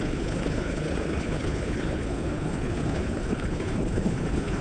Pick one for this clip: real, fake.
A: fake